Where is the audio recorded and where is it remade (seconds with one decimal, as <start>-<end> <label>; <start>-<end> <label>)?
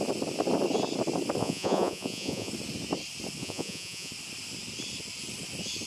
0.0-1.4 recorded; 1.4-2.5 remade; 2.5-3.4 recorded; 3.4-4.1 remade; 4.1-5.9 recorded